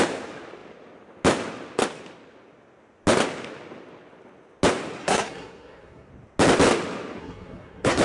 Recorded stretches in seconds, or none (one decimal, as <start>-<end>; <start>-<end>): 0.0-5.0; 6.1-7.2